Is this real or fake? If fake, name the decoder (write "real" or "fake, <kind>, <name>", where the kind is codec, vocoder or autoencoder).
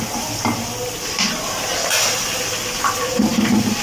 real